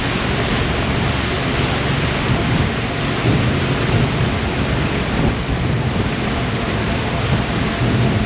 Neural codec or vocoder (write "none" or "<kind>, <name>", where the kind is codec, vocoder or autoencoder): none